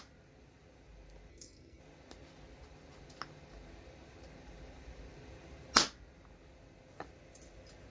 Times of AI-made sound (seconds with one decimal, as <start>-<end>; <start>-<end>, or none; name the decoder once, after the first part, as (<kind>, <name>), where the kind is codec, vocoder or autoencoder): 1.3-1.8 (codec, SNAC)